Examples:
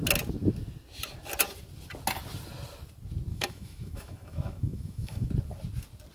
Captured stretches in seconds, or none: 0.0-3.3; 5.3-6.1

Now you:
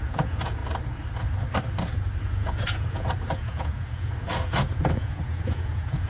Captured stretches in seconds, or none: 0.6-2.2

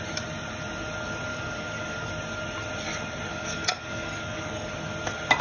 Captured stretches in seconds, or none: 0.0-1.3; 2.1-3.3; 4.7-5.4

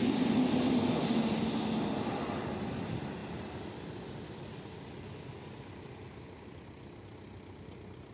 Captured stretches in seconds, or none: 0.0-3.2; 7.6-8.1

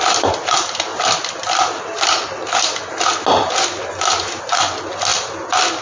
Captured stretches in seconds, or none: 0.0-5.8